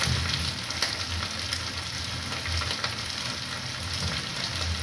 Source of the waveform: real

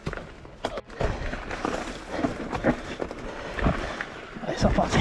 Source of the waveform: real